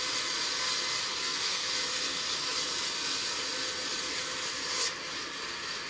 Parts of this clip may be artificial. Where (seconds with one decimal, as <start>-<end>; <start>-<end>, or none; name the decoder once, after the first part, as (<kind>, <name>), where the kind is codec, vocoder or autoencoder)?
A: 1.2-1.7 (codec, SNAC)